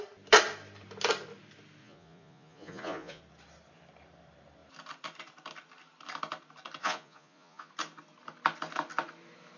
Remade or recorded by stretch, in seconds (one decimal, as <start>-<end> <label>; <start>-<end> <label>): 0.0-1.8 recorded; 1.8-3.2 remade; 3.2-6.8 recorded; 6.8-7.7 remade; 7.7-9.6 recorded